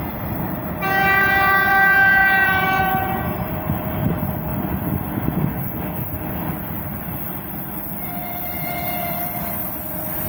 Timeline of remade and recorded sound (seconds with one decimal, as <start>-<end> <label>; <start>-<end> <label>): 0.0-4.5 remade; 4.5-6.8 recorded; 6.8-10.3 remade